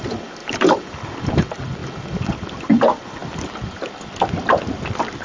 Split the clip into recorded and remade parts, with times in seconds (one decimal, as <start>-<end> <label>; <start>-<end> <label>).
0.0-0.4 recorded; 0.4-1.2 remade; 1.2-5.2 recorded